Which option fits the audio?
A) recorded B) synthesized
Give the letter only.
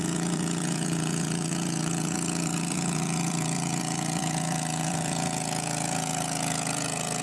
B